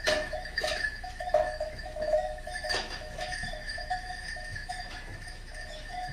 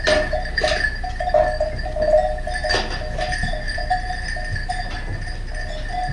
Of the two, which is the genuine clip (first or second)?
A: second